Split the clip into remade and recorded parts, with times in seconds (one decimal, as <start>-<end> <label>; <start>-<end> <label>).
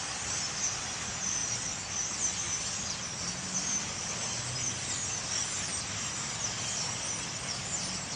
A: 0.0-8.2 recorded